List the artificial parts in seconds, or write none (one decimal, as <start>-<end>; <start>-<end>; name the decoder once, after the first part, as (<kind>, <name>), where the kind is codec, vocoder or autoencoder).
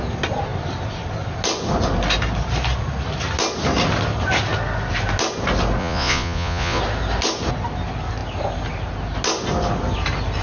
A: 5.8-6.8 (vocoder, Vocos)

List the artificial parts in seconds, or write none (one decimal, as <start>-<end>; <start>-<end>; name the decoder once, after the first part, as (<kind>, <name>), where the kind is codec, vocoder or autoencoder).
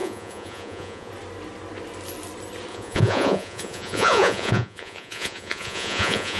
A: 0.0-1.1 (vocoder, Vocos); 2.7-6.4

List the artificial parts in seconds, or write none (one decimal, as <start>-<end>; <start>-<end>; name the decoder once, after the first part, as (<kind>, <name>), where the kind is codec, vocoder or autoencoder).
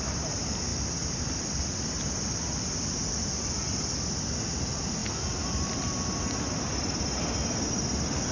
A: none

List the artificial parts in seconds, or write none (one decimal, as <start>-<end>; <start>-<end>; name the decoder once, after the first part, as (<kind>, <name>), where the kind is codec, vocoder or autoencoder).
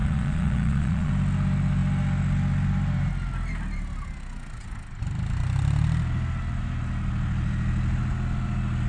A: 0.0-1.1 (vocoder, Vocos)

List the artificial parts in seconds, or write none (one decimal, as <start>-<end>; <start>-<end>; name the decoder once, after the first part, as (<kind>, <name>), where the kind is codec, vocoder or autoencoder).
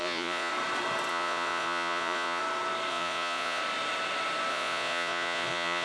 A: 0.0-0.5 (vocoder, Vocos); 1.1-2.4; 2.9-3.6; 4.5-5.8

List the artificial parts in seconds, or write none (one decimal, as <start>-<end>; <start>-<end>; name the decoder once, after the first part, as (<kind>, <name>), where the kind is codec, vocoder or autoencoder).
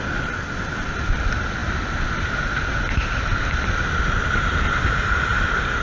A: none